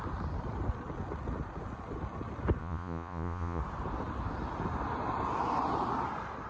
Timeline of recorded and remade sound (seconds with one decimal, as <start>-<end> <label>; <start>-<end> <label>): 0.0-2.6 recorded; 2.6-3.6 remade; 3.6-6.5 recorded